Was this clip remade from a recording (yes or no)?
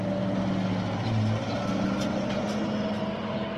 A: no